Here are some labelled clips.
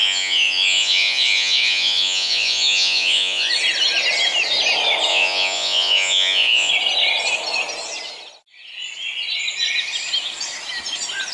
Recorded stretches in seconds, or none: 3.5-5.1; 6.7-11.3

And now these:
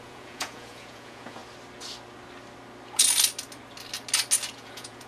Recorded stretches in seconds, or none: 1.4-4.5

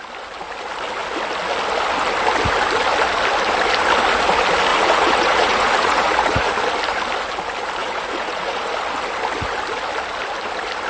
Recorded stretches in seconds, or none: 0.0-4.7; 6.5-7.8; 8.7-10.9

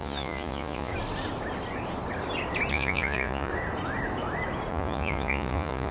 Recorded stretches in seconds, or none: 0.9-2.7; 3.5-4.7

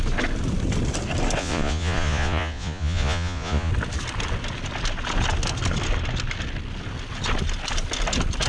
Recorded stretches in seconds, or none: 0.0-1.4; 3.7-8.5

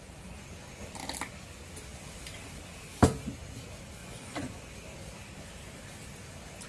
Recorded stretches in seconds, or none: 0.0-4.0; 4.7-6.7

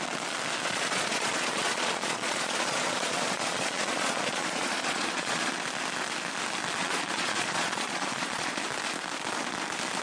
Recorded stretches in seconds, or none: 0.0-0.6; 5.5-6.8; 8.6-10.0

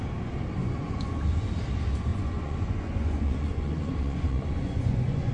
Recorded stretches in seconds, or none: 0.0-0.6; 1.5-2.1